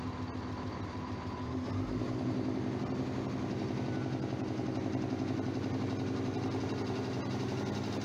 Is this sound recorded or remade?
recorded